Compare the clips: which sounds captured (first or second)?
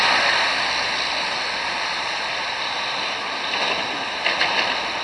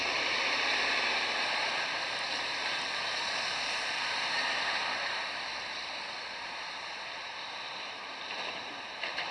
first